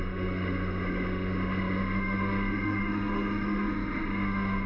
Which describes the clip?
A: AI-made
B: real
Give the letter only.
A